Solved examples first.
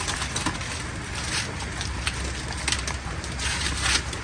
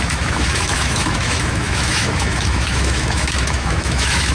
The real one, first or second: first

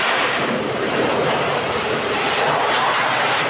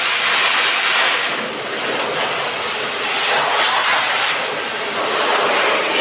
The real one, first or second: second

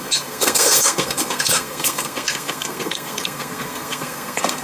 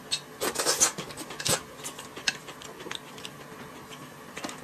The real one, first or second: second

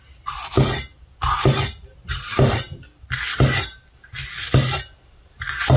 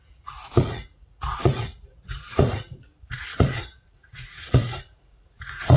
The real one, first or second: first